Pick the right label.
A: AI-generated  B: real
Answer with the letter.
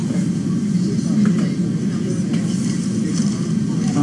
B